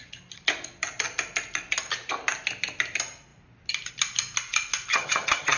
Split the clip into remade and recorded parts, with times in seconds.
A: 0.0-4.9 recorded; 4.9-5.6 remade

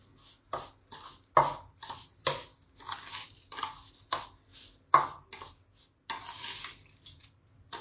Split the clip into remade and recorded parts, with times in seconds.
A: 0.0-7.8 recorded

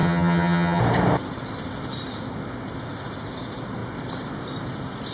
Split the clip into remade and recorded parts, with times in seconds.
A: 0.0-0.8 remade; 0.8-5.1 recorded

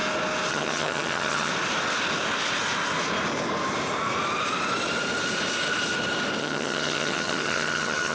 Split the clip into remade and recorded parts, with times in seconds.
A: 0.0-0.5 recorded; 0.5-1.5 remade; 1.5-6.4 recorded; 6.4-8.1 remade